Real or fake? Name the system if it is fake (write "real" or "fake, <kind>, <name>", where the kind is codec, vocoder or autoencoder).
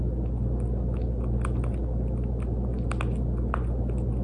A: real